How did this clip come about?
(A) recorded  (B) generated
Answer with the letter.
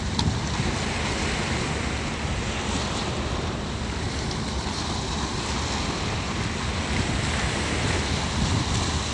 A